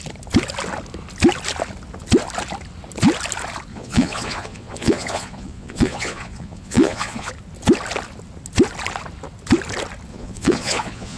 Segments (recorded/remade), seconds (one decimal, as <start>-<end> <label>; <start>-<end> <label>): 0.0-3.7 recorded; 3.7-7.3 remade; 7.3-10.1 recorded; 10.1-11.2 remade